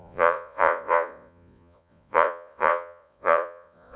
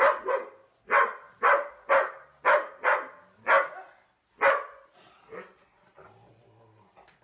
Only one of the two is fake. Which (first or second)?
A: first